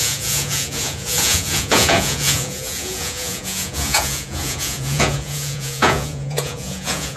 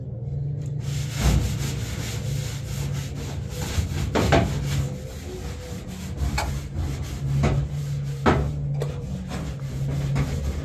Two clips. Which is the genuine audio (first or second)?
second